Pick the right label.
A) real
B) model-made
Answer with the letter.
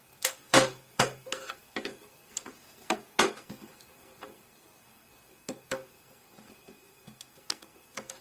B